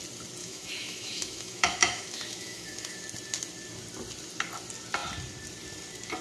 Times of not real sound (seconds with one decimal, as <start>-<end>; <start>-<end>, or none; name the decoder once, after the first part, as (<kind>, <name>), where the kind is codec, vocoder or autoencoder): 0.4-3.0 (autoencoder, DAC-VAE)